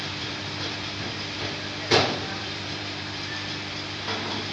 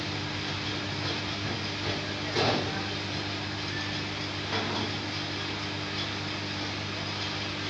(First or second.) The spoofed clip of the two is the first